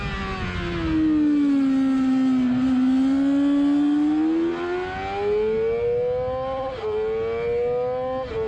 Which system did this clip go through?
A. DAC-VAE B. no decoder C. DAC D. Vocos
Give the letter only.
B